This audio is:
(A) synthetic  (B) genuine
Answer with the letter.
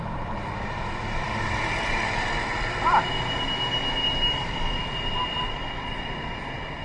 B